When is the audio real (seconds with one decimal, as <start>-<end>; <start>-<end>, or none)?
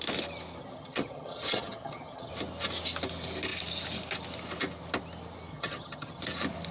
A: 0.0-0.6; 2.3-5.5; 6.2-6.7